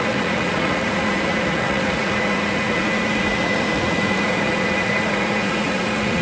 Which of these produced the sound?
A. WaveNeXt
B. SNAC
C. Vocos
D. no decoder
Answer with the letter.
C